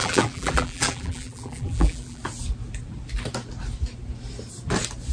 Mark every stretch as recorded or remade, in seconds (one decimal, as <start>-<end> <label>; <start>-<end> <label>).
0.0-2.2 remade; 2.2-5.1 recorded